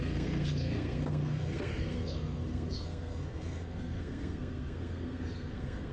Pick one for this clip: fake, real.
fake